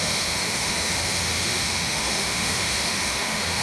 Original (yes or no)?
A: no